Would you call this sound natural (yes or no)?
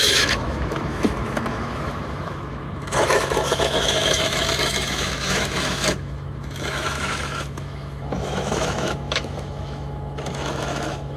no